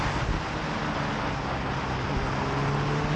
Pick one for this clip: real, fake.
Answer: real